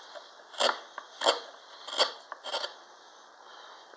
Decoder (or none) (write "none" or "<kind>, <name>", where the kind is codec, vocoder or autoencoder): none